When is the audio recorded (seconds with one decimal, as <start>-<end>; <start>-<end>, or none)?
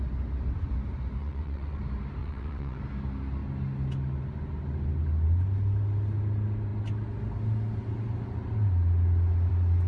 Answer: 0.0-1.2; 1.8-2.2; 2.8-9.9